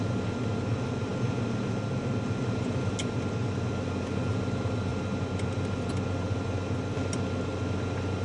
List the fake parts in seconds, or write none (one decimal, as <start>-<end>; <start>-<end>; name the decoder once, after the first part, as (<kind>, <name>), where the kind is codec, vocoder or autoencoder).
none